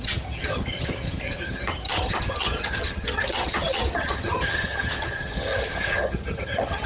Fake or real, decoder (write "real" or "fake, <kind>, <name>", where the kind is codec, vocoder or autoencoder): fake, vocoder, HiFi-GAN